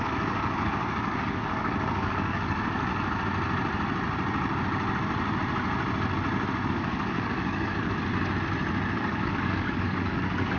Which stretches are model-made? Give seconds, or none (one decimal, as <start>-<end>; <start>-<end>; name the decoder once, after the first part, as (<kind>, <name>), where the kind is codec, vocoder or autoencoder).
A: 0.0-2.9 (codec, DAC); 6.7-8.0; 9.0-10.6